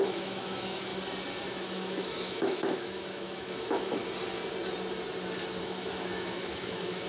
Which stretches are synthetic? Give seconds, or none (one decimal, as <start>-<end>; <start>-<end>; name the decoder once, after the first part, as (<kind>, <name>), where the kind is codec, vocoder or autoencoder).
0.0-0.9 (autoencoder, DAC-VAE); 1.4-4.0; 5.6-7.1